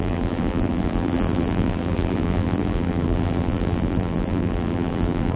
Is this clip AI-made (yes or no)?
yes